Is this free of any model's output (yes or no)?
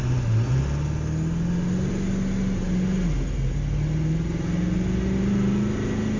yes